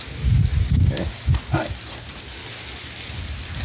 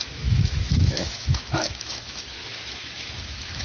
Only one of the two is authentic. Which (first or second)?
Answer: first